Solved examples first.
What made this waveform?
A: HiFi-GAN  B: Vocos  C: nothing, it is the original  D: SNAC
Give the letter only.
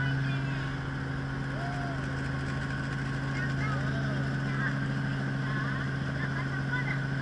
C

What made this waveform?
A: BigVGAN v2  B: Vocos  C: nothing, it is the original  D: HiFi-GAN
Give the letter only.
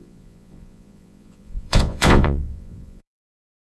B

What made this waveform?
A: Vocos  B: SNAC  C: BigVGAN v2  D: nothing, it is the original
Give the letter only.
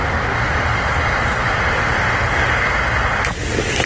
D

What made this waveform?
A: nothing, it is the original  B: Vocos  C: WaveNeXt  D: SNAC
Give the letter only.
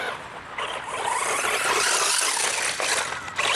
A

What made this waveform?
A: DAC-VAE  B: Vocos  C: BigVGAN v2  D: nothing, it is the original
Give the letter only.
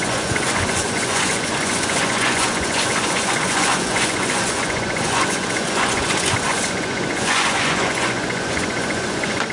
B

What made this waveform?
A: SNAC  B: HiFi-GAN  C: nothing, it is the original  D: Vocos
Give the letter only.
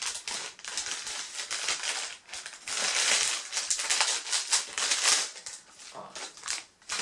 C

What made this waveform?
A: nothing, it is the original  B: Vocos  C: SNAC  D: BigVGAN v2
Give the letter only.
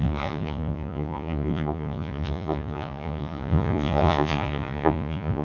B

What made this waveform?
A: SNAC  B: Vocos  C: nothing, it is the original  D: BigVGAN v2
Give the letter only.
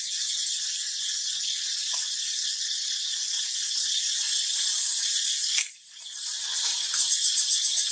C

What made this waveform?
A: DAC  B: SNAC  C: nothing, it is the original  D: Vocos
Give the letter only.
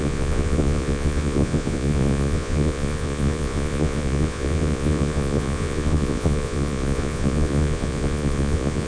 D